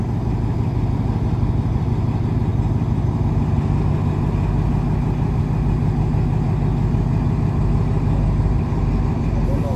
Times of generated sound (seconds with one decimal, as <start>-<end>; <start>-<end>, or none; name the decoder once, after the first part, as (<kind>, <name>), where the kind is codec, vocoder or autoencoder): none